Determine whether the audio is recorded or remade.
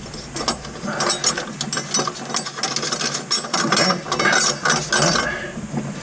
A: recorded